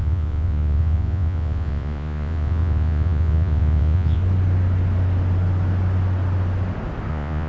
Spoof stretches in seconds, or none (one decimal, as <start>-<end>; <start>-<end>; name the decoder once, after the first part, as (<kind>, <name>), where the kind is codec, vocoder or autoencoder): 0.0-4.2 (vocoder, Vocos); 7.1-7.5